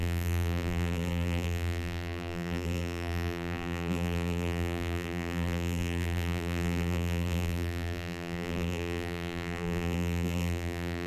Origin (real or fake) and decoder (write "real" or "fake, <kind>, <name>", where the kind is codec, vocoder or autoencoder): fake, vocoder, BigVGAN v2